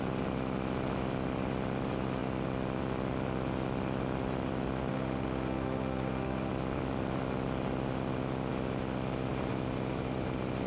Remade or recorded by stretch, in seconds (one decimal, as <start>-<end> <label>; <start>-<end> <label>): 0.0-4.9 recorded; 4.9-6.5 remade; 6.5-10.7 recorded